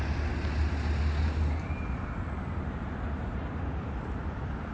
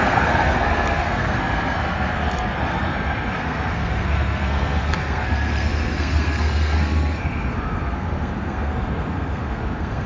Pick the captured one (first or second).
first